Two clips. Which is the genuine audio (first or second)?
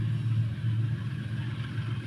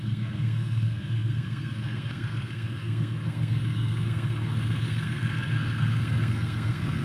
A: first